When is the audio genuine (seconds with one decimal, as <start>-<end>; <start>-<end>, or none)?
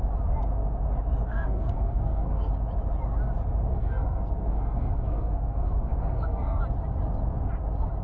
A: 0.0-1.3; 2.5-3.7; 6.6-8.0